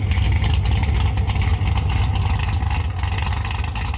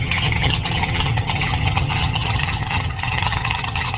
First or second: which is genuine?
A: first